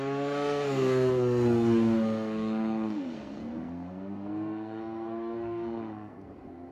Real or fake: fake